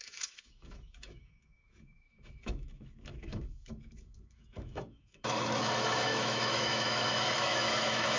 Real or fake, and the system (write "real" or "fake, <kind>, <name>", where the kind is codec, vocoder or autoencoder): fake, autoencoder, DAC-VAE